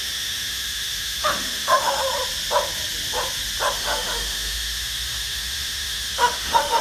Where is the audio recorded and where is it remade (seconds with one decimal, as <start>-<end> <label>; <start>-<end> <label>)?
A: 0.0-2.0 remade; 2.0-3.7 recorded; 3.7-6.8 remade